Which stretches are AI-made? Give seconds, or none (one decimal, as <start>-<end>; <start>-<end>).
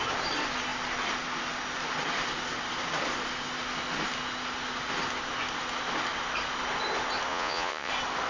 7.3-7.9